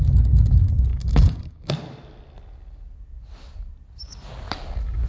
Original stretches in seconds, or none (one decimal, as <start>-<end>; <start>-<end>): 0.0-0.9; 1.7-5.1